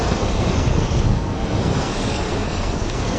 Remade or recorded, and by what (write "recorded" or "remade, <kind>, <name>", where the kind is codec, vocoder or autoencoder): remade, codec, SNAC